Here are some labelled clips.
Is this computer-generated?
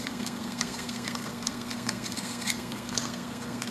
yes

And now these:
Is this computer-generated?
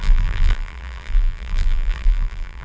yes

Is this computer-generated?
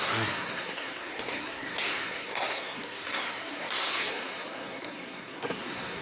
yes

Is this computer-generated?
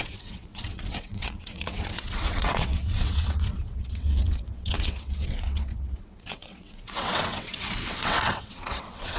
yes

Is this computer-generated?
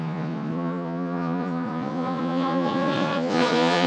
yes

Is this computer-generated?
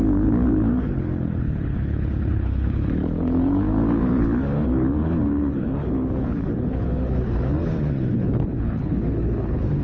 yes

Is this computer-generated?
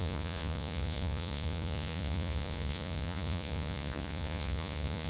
yes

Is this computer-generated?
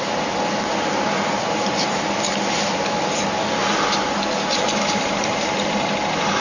no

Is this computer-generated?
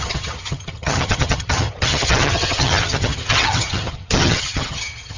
yes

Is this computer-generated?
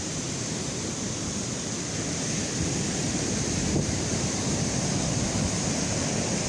yes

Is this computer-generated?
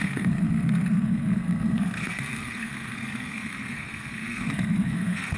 yes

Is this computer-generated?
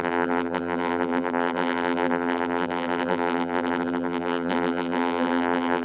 yes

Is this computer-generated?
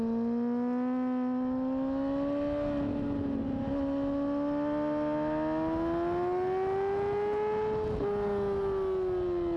no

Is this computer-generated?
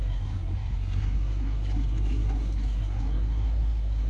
yes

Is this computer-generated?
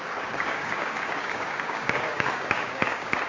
yes